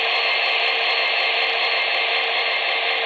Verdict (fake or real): real